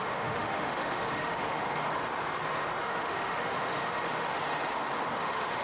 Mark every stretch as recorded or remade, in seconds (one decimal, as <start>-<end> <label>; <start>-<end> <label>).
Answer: 0.0-1.7 remade; 1.7-2.8 recorded; 2.8-4.4 remade; 4.4-5.1 recorded; 5.1-5.6 remade